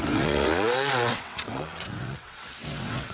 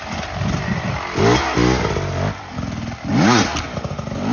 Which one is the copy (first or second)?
first